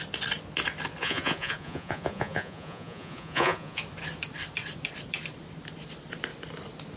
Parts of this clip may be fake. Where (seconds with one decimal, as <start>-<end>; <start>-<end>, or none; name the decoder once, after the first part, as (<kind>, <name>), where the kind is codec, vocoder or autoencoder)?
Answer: 1.0-3.8 (vocoder, Vocos)